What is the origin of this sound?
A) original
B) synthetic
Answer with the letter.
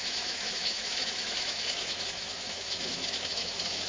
B